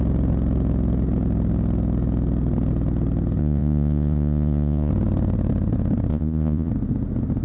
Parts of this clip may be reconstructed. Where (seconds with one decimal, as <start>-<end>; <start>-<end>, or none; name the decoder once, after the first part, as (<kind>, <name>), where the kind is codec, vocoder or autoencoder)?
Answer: 3.4-4.9 (vocoder, Vocos); 6.1-6.7